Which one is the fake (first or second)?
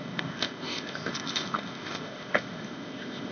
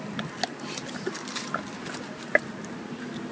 first